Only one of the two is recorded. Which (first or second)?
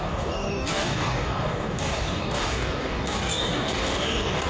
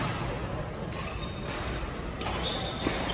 second